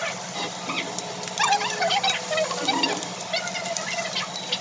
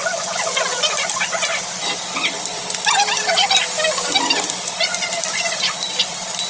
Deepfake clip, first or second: first